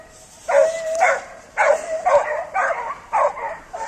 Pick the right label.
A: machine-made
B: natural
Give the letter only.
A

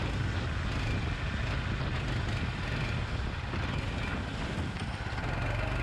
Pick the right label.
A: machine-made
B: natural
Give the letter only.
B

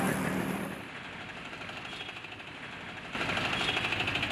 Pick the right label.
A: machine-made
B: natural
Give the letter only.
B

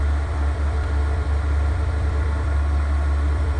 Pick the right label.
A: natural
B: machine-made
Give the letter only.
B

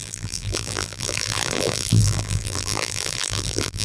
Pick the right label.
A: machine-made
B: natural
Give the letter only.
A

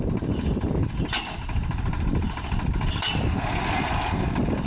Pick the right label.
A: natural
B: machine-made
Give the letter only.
B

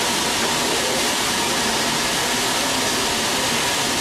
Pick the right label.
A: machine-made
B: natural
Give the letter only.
B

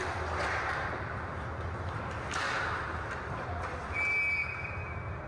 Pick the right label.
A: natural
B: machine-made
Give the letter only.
A